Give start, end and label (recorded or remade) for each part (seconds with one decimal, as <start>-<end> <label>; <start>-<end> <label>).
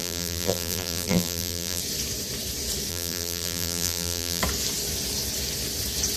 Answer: 0.0-1.8 remade; 1.8-2.9 recorded; 2.9-4.4 remade; 4.4-6.2 recorded